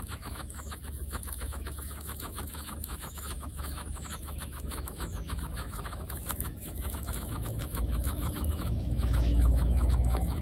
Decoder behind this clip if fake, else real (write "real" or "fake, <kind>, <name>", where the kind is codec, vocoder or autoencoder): fake, autoencoder, DAC-VAE